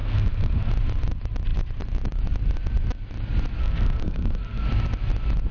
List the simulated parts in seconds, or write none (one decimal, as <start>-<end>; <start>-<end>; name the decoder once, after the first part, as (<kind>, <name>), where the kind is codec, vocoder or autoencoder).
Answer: 0.0-0.7 (codec, SNAC); 3.6-4.6